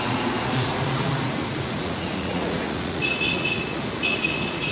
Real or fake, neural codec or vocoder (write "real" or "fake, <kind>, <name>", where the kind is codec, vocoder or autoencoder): fake, vocoder, Vocos